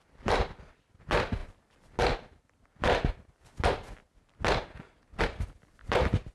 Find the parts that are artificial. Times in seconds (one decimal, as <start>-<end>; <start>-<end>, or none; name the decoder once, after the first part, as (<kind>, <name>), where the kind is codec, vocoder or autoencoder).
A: 0.0-1.4 (vocoder, BigVGAN v2); 5.2-6.3